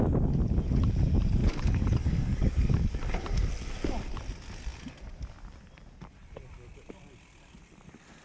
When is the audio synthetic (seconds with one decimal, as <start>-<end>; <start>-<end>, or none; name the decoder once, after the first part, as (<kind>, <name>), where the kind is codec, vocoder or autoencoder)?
1.4-2.5 (codec, DAC)